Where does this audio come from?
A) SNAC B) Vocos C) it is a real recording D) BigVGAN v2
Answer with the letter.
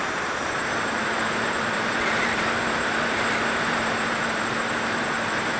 D